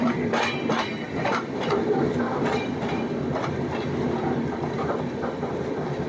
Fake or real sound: real